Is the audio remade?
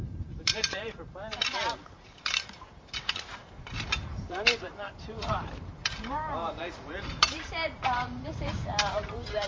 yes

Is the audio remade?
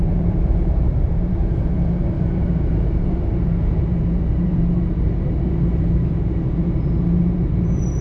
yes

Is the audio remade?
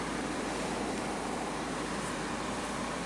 yes